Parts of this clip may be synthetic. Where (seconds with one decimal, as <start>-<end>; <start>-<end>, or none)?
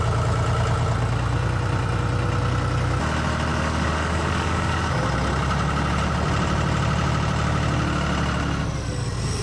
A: 3.5-5.0